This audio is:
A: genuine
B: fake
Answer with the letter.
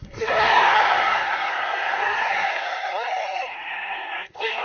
B